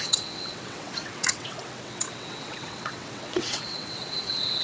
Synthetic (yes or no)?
yes